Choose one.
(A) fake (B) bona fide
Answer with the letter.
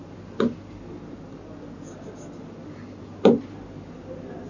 B